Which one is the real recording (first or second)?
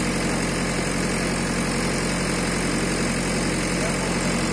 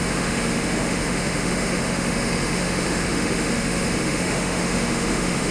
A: first